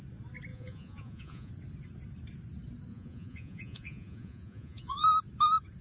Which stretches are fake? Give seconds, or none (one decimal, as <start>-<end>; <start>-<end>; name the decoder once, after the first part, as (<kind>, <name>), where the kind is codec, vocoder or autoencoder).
0.5-1.5 (vocoder, Vocos); 2.9-5.0